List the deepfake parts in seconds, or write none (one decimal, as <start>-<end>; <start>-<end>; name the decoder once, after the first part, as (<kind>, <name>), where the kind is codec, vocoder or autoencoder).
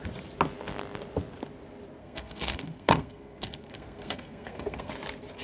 2.0-4.9 (codec, SNAC)